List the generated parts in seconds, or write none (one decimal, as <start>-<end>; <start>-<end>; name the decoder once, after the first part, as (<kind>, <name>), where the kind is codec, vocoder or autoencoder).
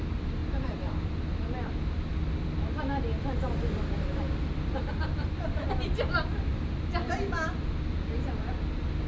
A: none